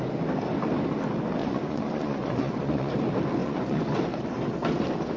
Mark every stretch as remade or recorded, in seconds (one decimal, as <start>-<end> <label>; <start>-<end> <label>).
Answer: 0.0-1.4 recorded; 1.4-2.9 remade; 2.9-3.4 recorded; 3.4-4.0 remade; 4.0-5.2 recorded